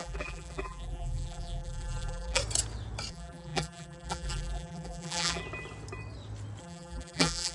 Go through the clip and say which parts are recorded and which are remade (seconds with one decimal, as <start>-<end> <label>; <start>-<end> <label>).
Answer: 0.0-2.4 remade; 2.4-3.1 recorded; 3.1-5.4 remade; 5.4-6.6 recorded; 6.6-7.5 remade